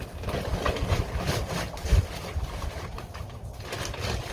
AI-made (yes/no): no